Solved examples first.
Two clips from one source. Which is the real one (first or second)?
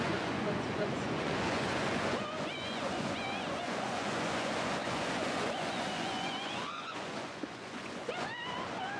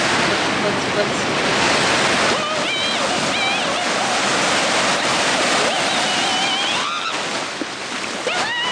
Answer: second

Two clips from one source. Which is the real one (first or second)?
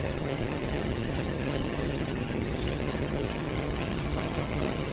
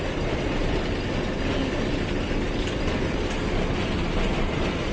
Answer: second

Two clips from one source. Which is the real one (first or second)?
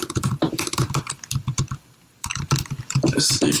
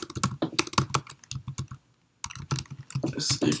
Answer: second